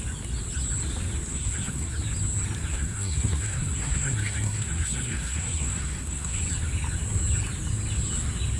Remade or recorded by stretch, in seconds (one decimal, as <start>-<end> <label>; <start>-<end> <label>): 0.0-1.3 recorded; 1.3-1.9 remade; 1.9-2.7 recorded; 2.7-6.4 remade; 6.4-8.6 recorded